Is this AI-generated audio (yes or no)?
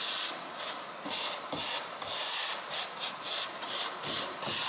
no